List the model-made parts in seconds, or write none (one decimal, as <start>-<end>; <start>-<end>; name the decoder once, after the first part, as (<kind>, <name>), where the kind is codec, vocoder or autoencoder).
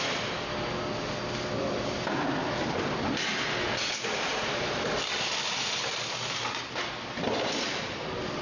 4.3-4.9 (vocoder, BigVGAN v2)